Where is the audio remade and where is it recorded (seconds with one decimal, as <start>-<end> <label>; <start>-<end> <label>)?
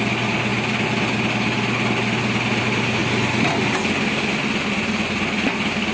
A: 0.0-5.9 recorded